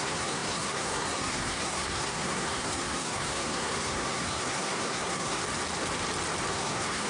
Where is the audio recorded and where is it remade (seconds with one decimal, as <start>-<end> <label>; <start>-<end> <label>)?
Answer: 0.0-5.4 remade; 5.4-6.5 recorded; 6.5-7.1 remade